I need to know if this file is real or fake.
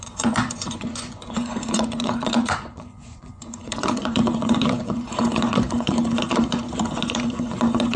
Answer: fake